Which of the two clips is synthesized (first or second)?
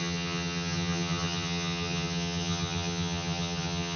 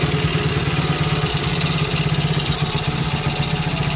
first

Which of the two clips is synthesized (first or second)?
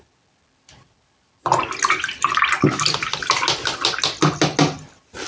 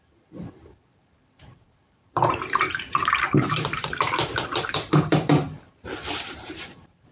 second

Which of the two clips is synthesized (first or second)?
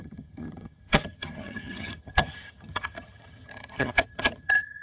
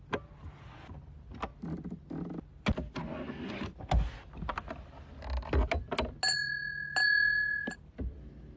first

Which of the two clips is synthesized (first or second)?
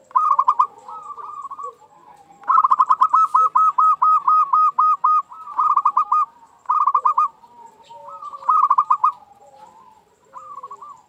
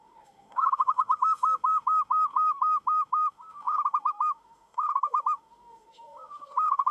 second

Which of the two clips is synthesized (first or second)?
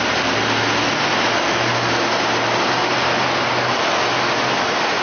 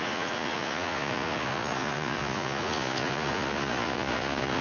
second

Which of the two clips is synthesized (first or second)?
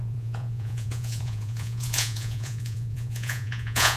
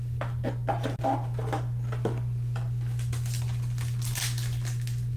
first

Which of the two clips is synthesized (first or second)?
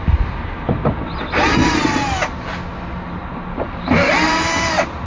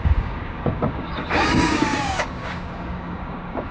second